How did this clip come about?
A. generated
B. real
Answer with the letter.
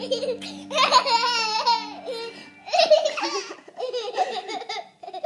B